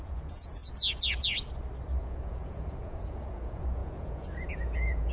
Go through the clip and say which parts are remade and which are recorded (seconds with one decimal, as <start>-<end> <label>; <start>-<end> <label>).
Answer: 0.0-0.6 remade; 0.6-2.0 recorded; 2.0-5.1 remade